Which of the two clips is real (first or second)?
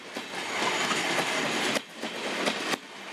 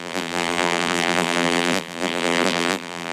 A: first